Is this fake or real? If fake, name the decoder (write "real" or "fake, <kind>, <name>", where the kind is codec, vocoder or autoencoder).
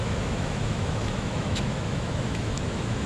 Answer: fake, autoencoder, DAC-VAE